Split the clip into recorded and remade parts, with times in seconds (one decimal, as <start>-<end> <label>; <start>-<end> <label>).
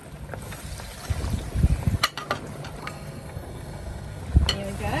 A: 0.0-2.8 recorded; 2.8-4.2 remade; 4.2-5.0 recorded